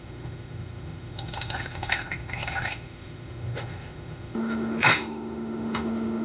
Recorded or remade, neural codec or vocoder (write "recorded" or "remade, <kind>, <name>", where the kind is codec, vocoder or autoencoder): remade, autoencoder, DAC-VAE